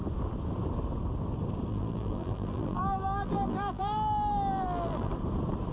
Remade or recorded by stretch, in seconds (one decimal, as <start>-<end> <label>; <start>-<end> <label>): 0.0-1.7 recorded; 1.7-5.1 remade; 5.1-5.7 recorded